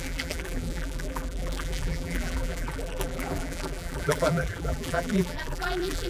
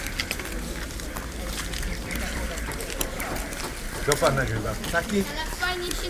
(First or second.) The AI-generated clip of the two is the first